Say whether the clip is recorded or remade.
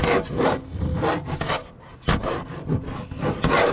recorded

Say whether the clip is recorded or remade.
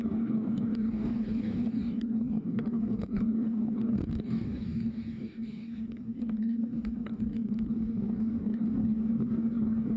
remade